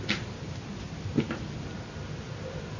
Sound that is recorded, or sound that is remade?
recorded